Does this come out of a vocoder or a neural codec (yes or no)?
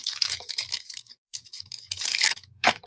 yes